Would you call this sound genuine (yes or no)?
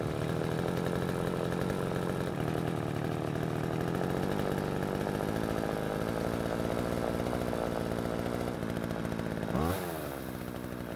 yes